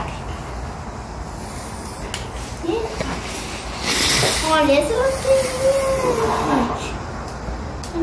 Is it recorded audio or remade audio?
recorded